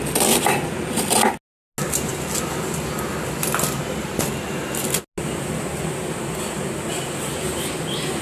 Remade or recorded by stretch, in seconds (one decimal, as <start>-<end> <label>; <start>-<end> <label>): 0.0-8.2 recorded